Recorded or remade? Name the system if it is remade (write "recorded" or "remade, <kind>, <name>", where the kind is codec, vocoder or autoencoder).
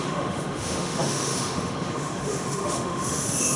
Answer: remade, autoencoder, DAC-VAE